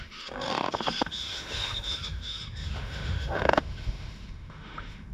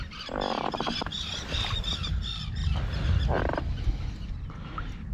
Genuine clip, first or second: second